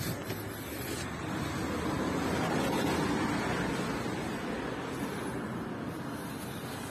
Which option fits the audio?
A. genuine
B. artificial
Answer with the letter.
A